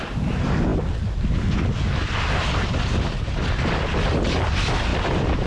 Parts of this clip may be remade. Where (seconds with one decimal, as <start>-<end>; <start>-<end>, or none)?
none